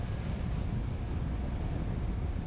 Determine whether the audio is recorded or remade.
recorded